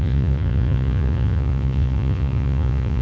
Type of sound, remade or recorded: remade